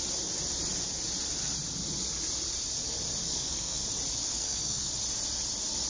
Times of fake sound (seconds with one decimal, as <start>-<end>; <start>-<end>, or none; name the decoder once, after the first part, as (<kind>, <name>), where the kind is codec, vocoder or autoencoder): 3.2-3.8 (codec, SNAC); 4.3-4.9

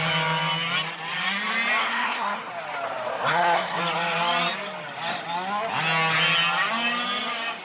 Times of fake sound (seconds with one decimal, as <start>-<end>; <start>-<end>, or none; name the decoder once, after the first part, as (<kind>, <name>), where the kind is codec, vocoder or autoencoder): 1.8-2.5 (codec, SNAC); 3.1-3.8